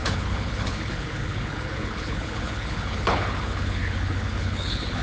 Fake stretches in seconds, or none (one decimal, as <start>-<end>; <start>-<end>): 0.0-5.0